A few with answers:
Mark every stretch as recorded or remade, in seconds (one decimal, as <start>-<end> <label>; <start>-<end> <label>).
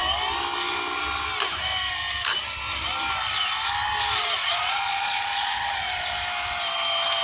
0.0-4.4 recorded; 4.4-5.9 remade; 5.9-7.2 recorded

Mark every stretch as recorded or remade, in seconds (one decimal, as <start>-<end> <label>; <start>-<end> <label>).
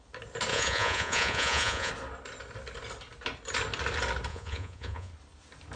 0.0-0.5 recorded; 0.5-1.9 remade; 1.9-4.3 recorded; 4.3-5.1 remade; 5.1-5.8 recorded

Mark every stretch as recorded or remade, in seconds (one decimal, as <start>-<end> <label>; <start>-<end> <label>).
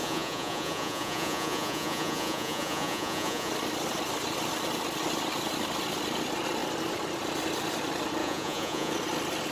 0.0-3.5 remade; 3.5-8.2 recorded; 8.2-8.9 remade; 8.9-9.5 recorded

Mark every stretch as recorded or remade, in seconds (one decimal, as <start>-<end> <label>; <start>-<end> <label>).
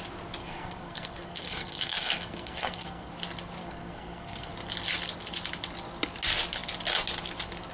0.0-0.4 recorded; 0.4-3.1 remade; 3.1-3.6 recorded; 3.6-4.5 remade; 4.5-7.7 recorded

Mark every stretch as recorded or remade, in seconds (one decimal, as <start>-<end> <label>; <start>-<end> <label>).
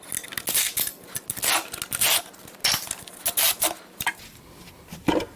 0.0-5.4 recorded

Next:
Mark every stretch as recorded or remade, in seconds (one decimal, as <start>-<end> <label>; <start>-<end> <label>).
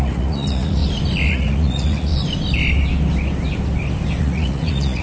0.0-0.8 remade; 0.8-1.3 recorded; 1.3-2.1 remade; 2.1-4.2 recorded; 4.2-5.0 remade